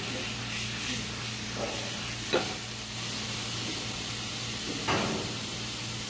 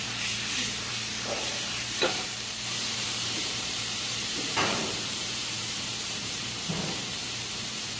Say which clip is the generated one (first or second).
second